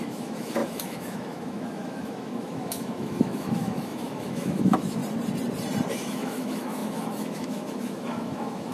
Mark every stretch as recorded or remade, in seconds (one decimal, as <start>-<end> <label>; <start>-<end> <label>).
0.0-5.0 remade; 5.0-5.9 recorded; 5.9-8.7 remade